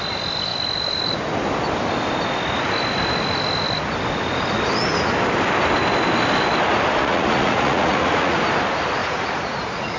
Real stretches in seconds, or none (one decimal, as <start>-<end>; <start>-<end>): 0.0-7.0; 8.4-9.0